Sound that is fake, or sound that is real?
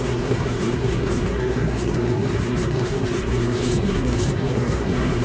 fake